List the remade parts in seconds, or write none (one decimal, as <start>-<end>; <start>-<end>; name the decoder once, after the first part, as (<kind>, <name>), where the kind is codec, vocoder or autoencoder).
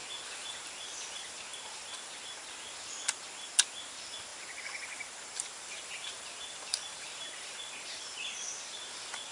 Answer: 0.5-1.5 (vocoder, BigVGAN v2); 3.8-9.3